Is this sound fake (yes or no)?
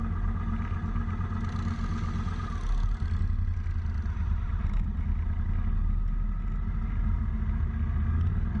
no